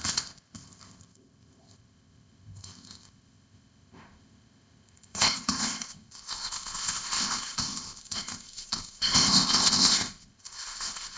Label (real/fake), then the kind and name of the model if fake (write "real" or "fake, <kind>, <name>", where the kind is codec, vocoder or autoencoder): fake, codec, ZipCodec